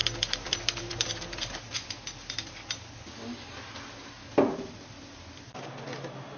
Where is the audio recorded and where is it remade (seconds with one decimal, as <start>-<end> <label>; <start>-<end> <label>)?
0.0-6.4 recorded